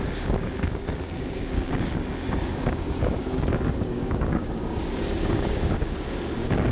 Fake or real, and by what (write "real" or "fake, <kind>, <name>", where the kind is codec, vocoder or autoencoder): fake, codec, DAC